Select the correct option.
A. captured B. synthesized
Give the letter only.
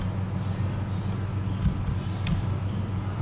A